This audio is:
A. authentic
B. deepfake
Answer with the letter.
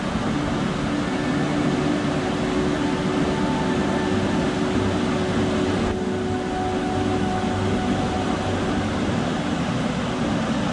A